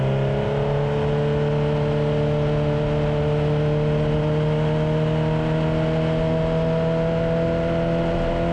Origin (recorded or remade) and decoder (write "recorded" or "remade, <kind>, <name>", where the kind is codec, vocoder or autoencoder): recorded